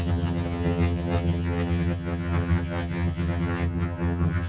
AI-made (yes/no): yes